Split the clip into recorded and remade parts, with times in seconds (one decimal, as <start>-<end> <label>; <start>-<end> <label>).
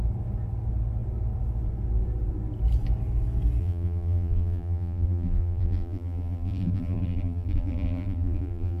0.0-3.6 recorded; 3.6-8.8 remade